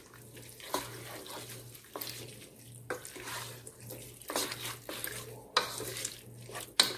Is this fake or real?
real